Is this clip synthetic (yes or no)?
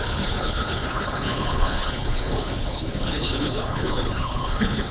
yes